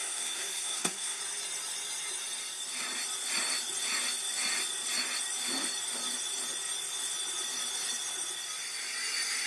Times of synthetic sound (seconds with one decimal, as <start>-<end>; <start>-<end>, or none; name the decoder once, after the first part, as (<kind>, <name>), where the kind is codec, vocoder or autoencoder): 0.0-1.2 (codec, SNAC)